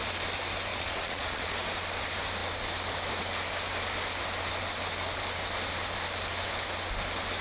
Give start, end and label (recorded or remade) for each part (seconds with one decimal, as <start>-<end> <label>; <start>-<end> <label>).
0.0-0.7 recorded; 0.7-1.5 remade; 1.5-7.4 recorded

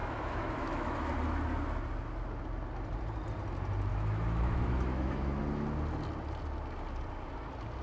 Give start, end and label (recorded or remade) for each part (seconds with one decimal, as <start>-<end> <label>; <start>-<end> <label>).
0.0-1.1 remade; 1.1-3.9 recorded; 3.9-5.4 remade; 5.4-7.8 recorded

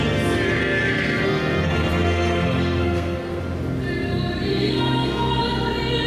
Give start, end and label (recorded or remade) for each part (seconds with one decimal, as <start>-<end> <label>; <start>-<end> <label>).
0.0-0.6 recorded; 0.6-3.4 remade; 3.4-4.5 recorded; 4.5-5.4 remade; 5.4-6.1 recorded

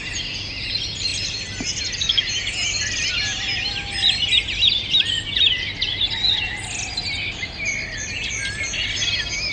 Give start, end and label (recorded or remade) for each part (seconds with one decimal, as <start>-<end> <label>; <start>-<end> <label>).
0.0-9.5 recorded

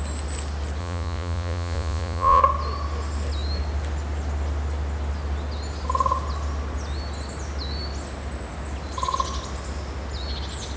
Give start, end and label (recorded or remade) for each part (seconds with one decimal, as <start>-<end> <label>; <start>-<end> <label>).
0.0-0.8 recorded; 0.8-2.4 remade; 2.4-10.8 recorded

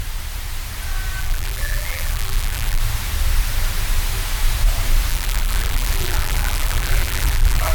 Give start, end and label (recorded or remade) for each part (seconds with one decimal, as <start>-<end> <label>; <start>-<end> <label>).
0.0-1.2 recorded; 1.2-2.8 remade; 2.8-5.1 recorded; 5.1-7.7 remade

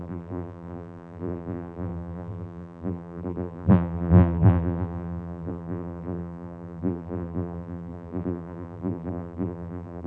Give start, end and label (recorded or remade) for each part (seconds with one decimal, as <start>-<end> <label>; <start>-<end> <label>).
0.0-10.1 remade